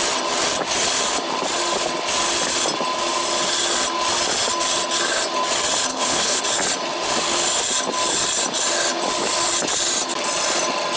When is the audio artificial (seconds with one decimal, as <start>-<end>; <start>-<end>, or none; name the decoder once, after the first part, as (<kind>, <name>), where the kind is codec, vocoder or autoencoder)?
5.9-6.4 (codec, HILCodec)